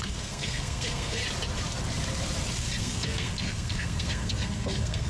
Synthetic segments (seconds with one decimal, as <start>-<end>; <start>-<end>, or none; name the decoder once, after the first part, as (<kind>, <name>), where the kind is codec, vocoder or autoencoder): 0.0-1.2 (codec, SNAC); 2.8-5.1